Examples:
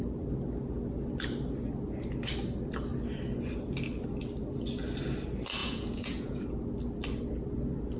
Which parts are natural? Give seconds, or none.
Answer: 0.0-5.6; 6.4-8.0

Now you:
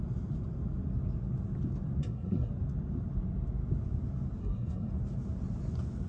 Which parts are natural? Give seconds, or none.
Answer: 0.0-2.0; 2.5-4.4; 4.9-6.1

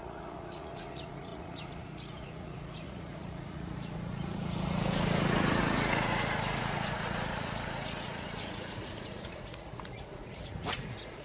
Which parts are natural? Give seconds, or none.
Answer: none

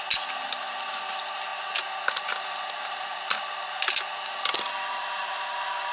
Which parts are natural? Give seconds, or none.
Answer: 0.0-5.9